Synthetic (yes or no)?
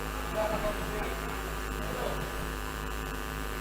yes